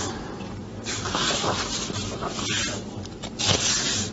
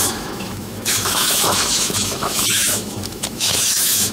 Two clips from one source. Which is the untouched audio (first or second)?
first